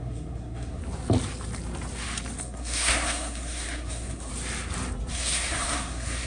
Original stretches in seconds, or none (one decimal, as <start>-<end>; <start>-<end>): 0.8-2.4; 4.3-5.1